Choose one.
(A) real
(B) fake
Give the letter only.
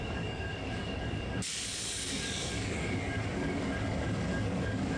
B